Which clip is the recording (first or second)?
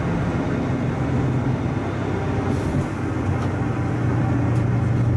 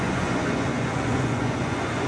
first